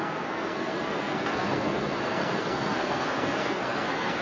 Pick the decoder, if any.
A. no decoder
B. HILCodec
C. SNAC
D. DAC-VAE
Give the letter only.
C